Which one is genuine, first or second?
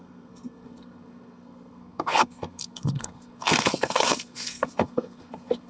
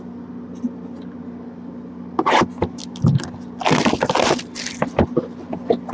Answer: second